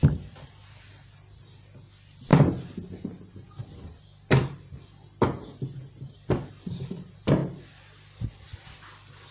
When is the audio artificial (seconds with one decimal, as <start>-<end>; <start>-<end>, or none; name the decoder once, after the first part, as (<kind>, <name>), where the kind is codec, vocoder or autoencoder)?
none